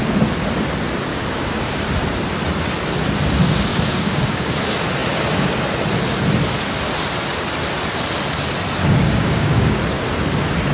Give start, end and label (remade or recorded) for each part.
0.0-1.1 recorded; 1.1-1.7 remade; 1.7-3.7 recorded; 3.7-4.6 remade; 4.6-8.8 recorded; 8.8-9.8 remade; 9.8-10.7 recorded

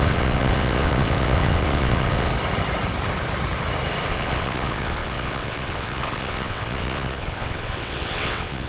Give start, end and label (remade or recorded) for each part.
0.0-2.3 remade; 2.3-4.1 recorded; 4.1-8.7 remade

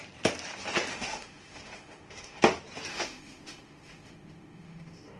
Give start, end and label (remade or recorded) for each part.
0.0-0.9 recorded; 0.9-2.4 remade; 2.4-2.9 recorded; 2.9-5.2 remade

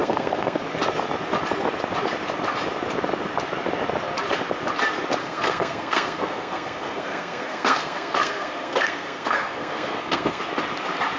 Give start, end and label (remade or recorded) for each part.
0.0-0.6 remade; 0.6-5.2 recorded; 5.2-10.4 remade; 10.4-11.2 recorded